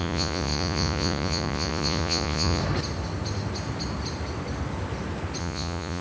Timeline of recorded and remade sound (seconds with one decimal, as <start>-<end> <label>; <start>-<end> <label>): 0.0-2.6 remade; 2.6-5.4 recorded; 5.4-6.0 remade